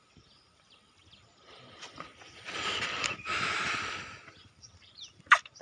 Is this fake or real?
fake